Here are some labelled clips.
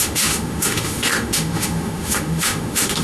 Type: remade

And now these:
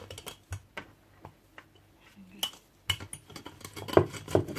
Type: recorded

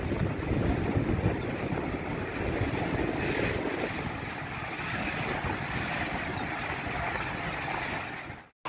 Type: recorded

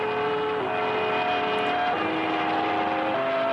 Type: recorded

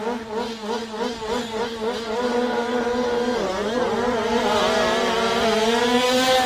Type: recorded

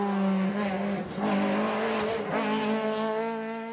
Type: recorded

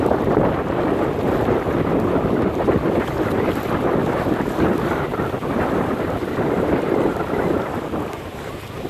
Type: recorded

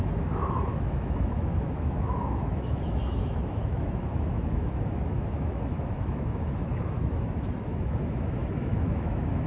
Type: remade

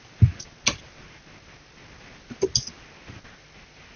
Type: recorded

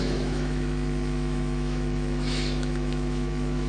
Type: remade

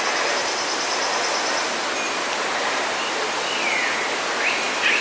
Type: recorded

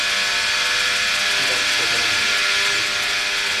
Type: recorded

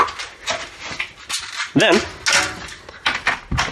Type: recorded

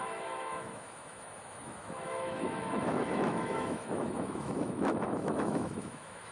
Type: remade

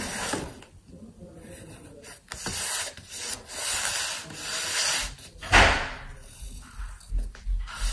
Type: recorded